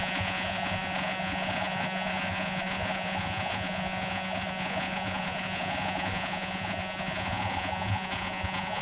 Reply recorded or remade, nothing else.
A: remade